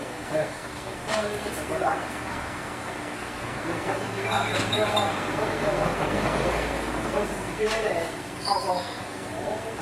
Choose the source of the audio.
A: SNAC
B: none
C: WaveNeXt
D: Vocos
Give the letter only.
A